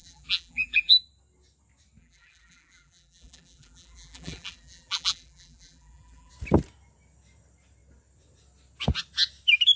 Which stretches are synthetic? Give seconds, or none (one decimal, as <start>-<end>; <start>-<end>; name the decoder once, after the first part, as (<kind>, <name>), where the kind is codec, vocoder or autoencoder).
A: 0.0-1.0 (vocoder, BigVGAN v2); 2.0-6.3